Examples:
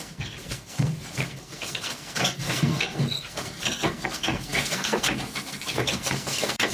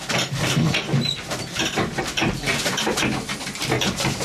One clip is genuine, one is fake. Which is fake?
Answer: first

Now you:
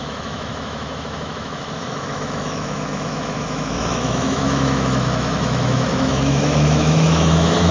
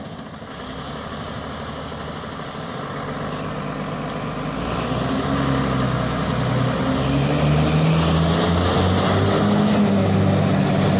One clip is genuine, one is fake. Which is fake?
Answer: first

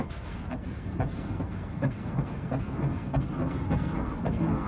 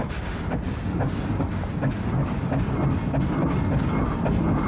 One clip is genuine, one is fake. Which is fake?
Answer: first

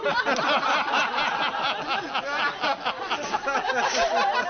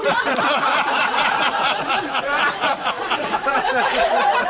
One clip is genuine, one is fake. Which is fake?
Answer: second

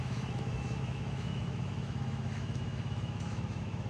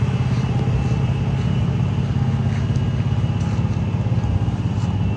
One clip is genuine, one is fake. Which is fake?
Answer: first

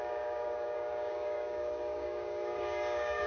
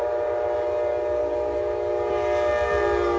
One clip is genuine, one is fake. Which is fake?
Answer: first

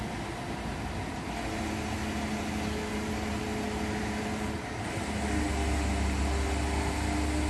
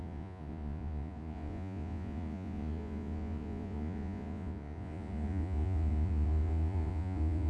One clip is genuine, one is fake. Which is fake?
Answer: second